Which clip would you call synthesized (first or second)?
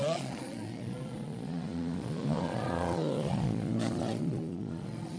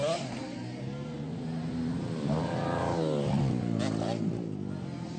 first